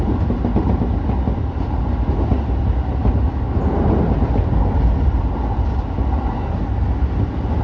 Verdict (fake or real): real